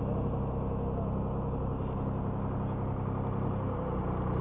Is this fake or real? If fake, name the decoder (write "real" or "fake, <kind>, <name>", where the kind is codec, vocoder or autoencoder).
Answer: real